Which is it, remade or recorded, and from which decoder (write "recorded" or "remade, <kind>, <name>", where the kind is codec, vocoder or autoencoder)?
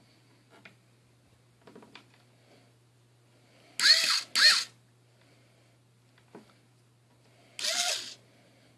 recorded